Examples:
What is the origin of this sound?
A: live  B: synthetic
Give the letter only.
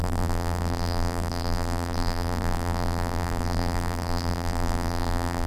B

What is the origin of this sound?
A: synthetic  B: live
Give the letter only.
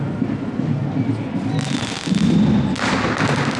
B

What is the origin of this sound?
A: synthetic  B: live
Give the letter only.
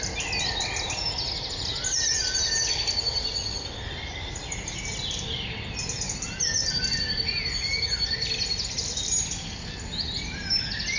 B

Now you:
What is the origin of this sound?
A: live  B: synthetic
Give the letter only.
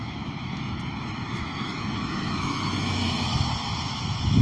B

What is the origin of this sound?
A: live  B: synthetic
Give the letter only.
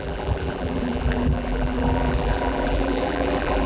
B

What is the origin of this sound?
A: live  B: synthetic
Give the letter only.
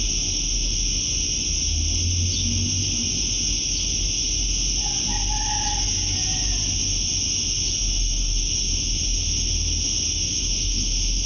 A